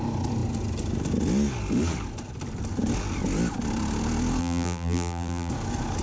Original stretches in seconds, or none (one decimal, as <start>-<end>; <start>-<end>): 0.0-4.4; 5.5-6.0